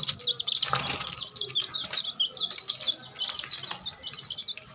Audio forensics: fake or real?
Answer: real